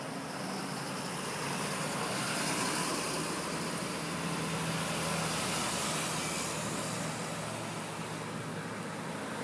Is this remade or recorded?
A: recorded